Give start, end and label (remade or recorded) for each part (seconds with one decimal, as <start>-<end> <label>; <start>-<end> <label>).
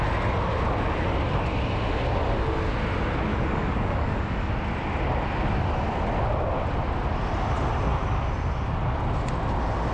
0.0-3.3 recorded; 3.3-4.5 remade; 4.5-9.9 recorded